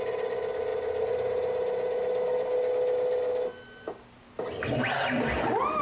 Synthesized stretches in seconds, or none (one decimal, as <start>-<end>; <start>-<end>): none